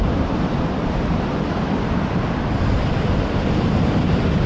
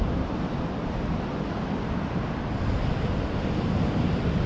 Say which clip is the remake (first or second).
first